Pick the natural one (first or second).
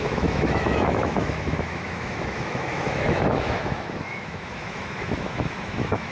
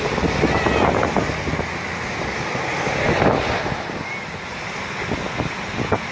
second